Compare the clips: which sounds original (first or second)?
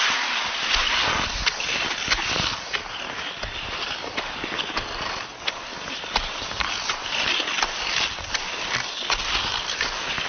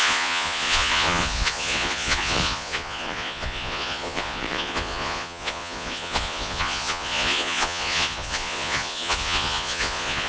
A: first